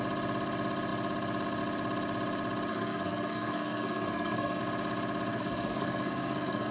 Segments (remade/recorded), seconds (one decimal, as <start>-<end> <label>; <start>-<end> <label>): 0.0-2.7 recorded; 2.7-4.6 remade; 4.6-5.3 recorded; 5.3-6.7 remade